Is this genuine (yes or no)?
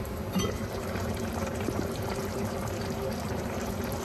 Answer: no